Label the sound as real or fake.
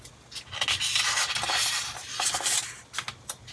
real